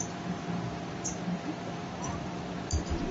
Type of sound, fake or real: fake